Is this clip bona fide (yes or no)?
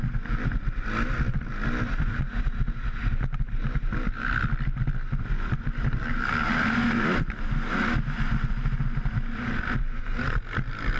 yes